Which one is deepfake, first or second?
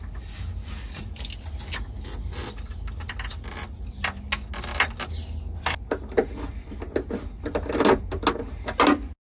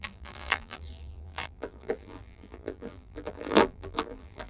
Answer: second